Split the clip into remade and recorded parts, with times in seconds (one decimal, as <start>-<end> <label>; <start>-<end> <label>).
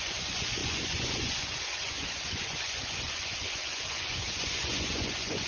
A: 0.0-5.5 remade